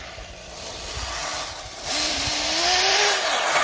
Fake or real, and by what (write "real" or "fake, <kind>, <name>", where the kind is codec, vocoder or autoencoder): real